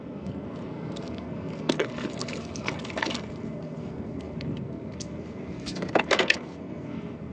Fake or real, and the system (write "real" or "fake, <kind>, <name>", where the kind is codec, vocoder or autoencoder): fake, codec, SNAC